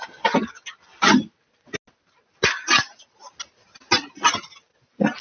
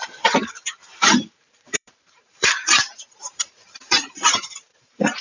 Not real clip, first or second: second